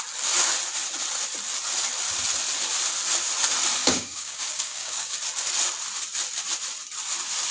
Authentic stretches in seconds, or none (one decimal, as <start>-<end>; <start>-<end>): 0.0-3.8; 5.2-7.5